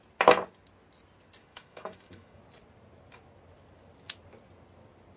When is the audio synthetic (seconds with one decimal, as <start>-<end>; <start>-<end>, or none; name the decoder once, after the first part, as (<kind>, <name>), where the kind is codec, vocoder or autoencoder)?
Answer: 1.4-2.4 (autoencoder, DAC-VAE)